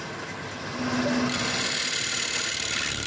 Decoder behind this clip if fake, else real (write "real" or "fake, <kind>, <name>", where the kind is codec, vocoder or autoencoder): real